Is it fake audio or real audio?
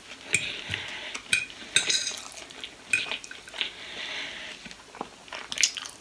real